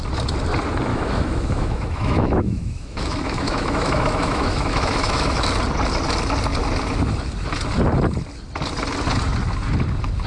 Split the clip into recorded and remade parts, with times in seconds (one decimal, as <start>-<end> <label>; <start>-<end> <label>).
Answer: 0.0-0.9 recorded; 0.9-5.5 remade; 5.5-10.3 recorded